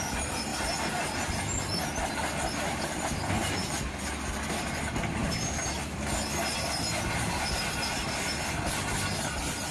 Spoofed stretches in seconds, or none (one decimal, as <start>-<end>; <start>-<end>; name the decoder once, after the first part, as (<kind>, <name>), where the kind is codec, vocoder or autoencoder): 0.5-1.3 (vocoder, BigVGAN v2); 5.2-6.1